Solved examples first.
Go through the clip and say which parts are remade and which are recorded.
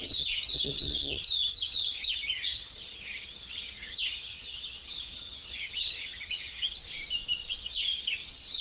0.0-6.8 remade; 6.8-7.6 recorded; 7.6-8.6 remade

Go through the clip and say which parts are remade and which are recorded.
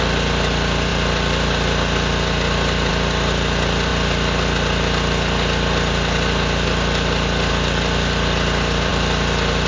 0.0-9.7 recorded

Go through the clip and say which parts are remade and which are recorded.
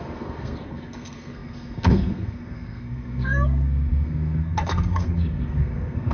0.0-6.1 remade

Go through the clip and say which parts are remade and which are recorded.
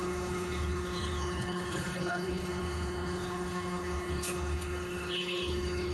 0.0-5.9 remade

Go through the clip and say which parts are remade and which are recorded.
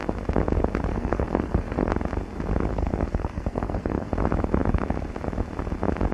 0.0-0.9 recorded; 0.9-1.9 remade; 1.9-2.7 recorded; 2.7-4.1 remade; 4.1-6.1 recorded